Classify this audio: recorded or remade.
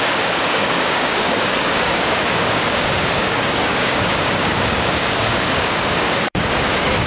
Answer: remade